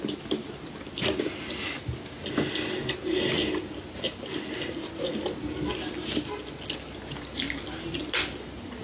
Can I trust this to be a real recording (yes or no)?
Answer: yes